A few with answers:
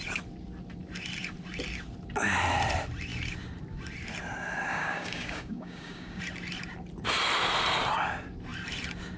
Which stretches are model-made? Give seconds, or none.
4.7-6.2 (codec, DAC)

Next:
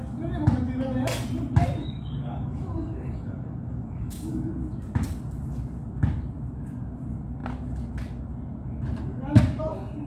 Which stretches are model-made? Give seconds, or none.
1.8-4.5 (codec, DAC)

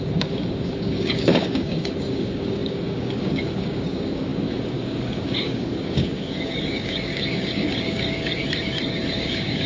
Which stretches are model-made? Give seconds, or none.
0.0-8.4 (codec, DAC); 9.1-9.7

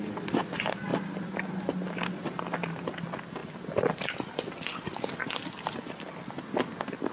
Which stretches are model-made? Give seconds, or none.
none

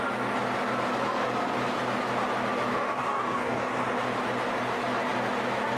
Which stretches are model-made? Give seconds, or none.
2.7-3.7 (codec, DAC)

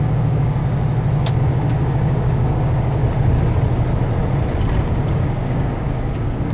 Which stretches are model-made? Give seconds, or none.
0.0-0.6 (codec, DAC); 1.4-3.0; 4.8-6.5

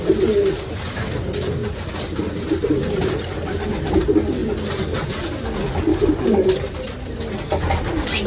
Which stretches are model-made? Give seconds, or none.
5.9-6.5 (codec, DAC)